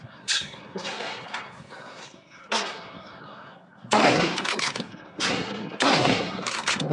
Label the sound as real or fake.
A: fake